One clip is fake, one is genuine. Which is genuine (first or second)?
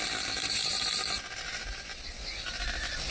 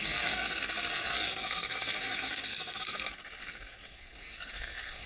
first